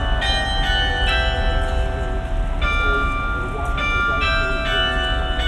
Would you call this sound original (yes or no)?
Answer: yes